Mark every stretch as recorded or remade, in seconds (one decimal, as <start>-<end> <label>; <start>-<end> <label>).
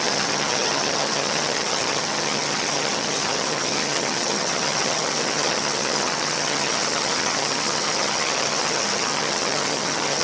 0.0-10.2 remade